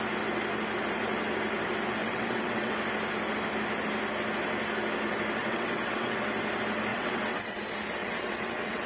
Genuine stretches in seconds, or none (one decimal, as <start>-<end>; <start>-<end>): 0.0-2.0; 2.7-5.4; 6.2-6.9; 7.6-8.0